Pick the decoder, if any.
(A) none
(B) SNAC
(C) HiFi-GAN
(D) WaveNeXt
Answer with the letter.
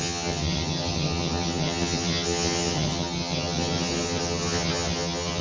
C